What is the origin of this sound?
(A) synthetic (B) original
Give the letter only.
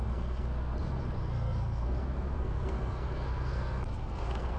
A